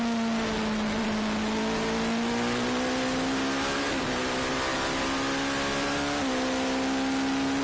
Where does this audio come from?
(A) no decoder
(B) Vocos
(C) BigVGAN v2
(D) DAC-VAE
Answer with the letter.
A